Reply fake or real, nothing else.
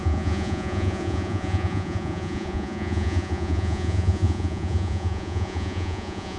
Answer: fake